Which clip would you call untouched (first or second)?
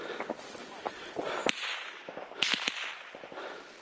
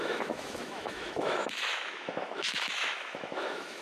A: first